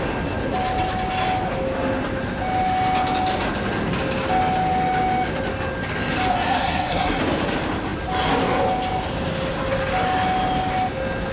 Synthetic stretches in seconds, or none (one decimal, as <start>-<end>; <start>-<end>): 6.3-7.2